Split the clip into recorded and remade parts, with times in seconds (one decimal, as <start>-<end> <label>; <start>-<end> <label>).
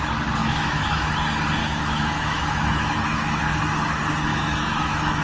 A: 0.0-0.4 recorded; 0.4-1.1 remade; 1.1-1.6 recorded; 1.6-3.4 remade; 3.4-4.3 recorded; 4.3-5.2 remade